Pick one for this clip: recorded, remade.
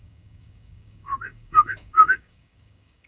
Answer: remade